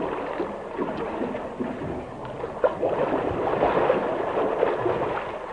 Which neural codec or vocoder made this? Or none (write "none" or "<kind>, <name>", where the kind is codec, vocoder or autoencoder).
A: none